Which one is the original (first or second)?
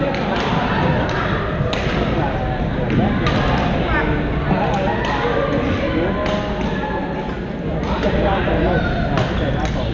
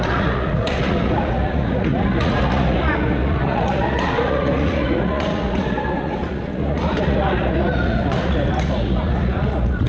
first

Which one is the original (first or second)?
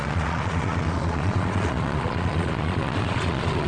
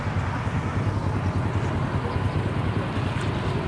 second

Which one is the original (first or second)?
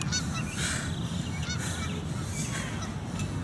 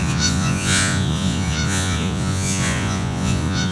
first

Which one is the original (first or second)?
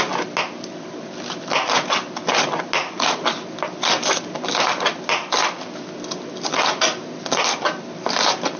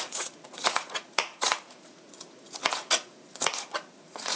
first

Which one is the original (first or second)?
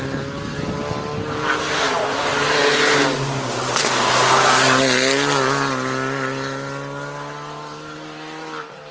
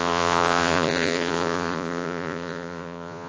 first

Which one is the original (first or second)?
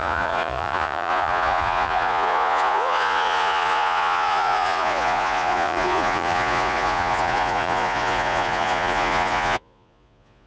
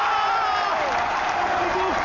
second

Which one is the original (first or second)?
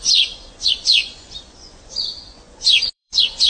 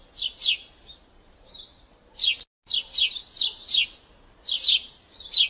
second